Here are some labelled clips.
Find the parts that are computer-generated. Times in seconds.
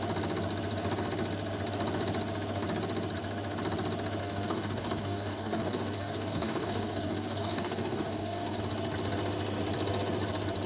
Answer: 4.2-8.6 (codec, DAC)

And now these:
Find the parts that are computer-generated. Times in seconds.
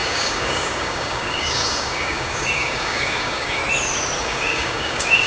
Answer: 0.0-3.6 (codec, DAC); 4.2-5.3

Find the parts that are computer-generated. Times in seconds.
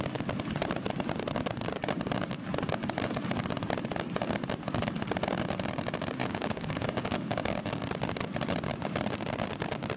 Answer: 6.2-7.6 (codec, DAC)